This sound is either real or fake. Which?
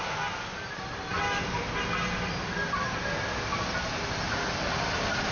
real